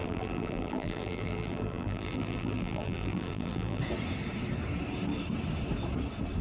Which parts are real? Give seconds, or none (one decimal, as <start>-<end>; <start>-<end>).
3.8-6.4